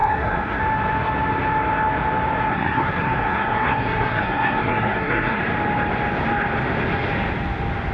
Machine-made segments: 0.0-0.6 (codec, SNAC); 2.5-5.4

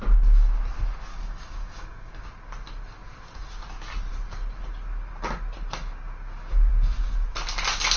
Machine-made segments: 1.1-2.1 (codec, DAC)

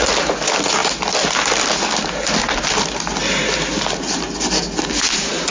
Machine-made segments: none

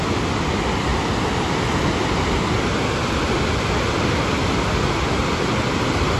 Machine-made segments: none

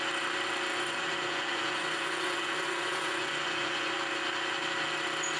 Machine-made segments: 0.7-3.9 (vocoder, Vocos)

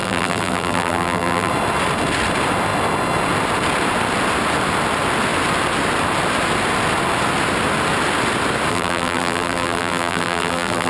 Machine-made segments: 0.0-1.5 (vocoder, BigVGAN v2); 8.7-10.9

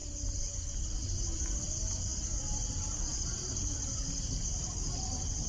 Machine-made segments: 2.1-5.5 (vocoder, BigVGAN v2)